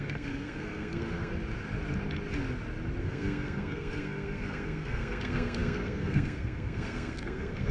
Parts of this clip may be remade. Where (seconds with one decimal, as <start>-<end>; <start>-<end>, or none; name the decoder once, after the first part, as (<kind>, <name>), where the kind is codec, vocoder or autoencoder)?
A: 0.0-1.3 (codec, SNAC); 3.0-7.7